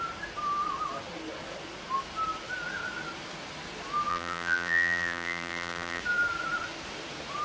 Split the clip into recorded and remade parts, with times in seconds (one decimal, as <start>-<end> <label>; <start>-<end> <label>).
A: 0.0-4.1 recorded; 4.1-6.0 remade; 6.0-7.4 recorded